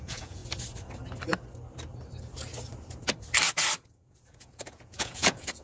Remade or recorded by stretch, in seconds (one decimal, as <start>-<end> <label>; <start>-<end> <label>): 0.0-0.4 remade; 0.4-3.8 recorded; 3.8-5.6 remade